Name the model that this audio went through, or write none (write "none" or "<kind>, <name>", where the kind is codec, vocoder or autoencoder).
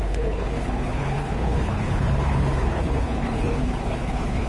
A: codec, HILCodec